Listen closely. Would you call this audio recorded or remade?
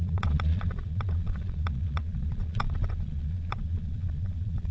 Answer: remade